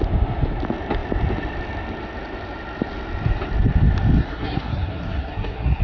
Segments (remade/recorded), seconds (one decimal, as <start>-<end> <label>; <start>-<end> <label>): 0.0-4.2 recorded; 4.2-5.8 remade